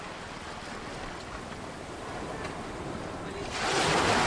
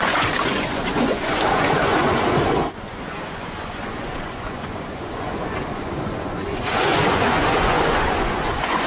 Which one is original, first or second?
first